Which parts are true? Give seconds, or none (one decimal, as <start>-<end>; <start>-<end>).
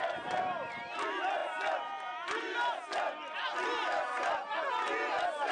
0.0-5.5